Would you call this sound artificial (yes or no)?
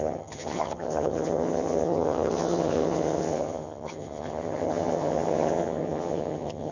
yes